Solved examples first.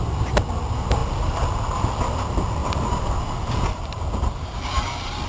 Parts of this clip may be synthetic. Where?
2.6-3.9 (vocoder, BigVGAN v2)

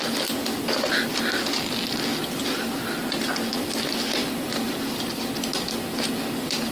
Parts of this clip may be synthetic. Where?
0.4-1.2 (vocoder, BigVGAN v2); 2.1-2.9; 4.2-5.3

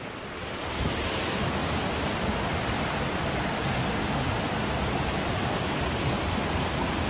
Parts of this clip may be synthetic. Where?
1.6-2.1 (vocoder, BigVGAN v2)